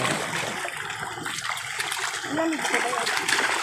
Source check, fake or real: real